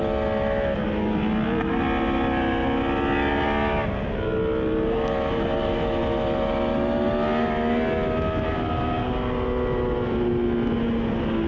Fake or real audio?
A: real